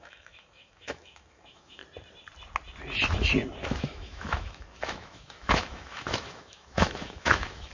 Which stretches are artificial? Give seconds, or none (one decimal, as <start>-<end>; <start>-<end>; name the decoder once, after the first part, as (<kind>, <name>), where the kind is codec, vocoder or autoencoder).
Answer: 0.0-1.8 (autoencoder, DAC-VAE); 3.6-7.7